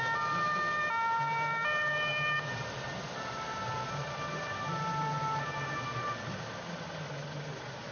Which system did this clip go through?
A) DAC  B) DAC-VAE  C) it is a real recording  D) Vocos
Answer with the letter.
C